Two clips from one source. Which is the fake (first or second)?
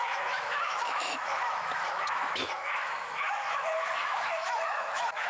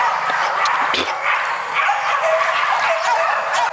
first